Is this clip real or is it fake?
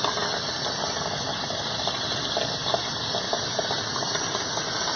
real